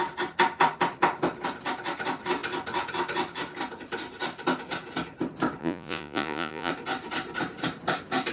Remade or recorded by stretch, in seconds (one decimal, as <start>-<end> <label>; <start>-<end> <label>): 0.0-5.6 recorded; 5.6-6.7 remade; 6.7-8.3 recorded